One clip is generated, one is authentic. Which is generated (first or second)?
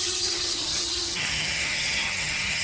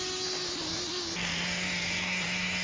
first